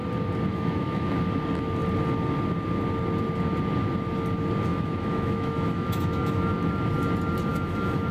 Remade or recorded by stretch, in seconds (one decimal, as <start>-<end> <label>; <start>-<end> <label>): 0.0-0.5 recorded; 0.5-1.1 remade; 1.1-4.7 recorded; 4.7-6.5 remade; 6.5-7.5 recorded; 7.5-8.1 remade